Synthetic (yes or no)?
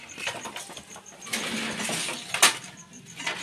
no